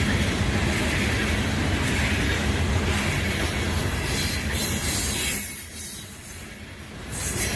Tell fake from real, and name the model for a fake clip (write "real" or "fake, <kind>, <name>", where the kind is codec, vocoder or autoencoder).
real